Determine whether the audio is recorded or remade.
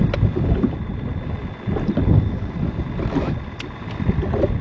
recorded